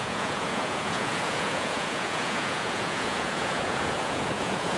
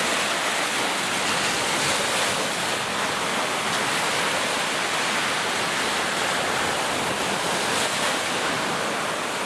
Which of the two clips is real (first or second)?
second